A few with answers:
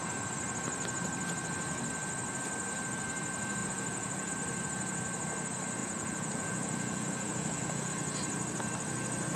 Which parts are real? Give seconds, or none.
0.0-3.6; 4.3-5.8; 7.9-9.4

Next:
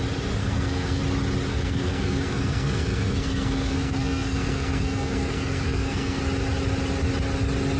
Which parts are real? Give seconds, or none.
0.0-0.4; 1.0-1.5; 6.2-7.8

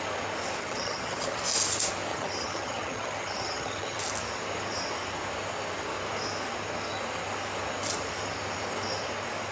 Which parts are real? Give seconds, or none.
0.0-0.6; 1.4-2.1; 4.0-9.5

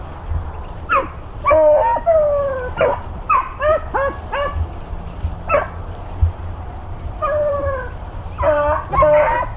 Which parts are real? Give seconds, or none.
0.0-6.8; 8.3-9.6

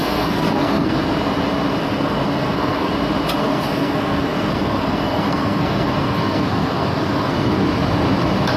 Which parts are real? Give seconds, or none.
1.0-1.8; 2.9-3.4; 7.6-8.6